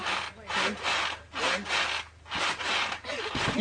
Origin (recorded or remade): recorded